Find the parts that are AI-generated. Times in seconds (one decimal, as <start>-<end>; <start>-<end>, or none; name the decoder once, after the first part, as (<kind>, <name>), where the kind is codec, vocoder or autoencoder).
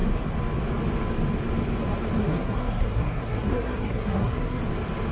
2.2-4.6 (codec, SNAC)